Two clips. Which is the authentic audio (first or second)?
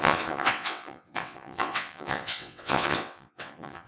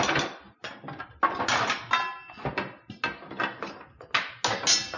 second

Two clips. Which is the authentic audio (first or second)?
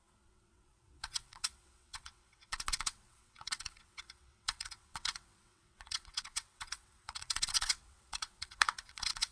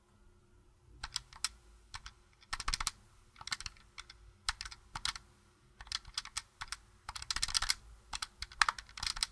second